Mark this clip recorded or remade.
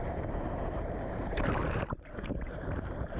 remade